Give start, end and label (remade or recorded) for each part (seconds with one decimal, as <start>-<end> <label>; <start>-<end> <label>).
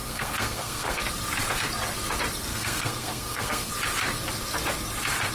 0.0-1.0 remade; 1.0-2.5 recorded; 2.5-3.7 remade; 3.7-5.3 recorded